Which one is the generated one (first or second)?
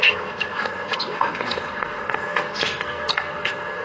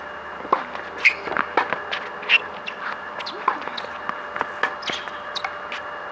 first